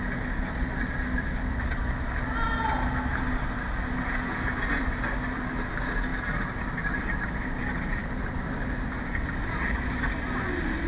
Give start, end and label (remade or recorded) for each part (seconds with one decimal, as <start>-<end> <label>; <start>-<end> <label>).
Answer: 0.0-10.9 recorded